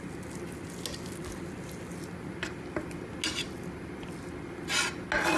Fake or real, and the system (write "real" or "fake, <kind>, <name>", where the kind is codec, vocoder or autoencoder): real